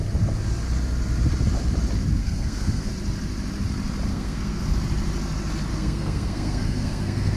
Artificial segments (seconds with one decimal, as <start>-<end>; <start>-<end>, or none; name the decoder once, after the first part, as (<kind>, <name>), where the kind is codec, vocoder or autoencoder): 2.2-2.9 (codec, SNAC); 4.1-4.6; 5.7-7.4